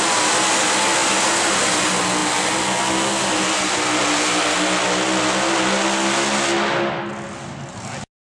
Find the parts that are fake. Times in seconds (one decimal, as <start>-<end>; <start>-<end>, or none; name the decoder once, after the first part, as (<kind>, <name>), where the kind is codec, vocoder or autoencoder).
none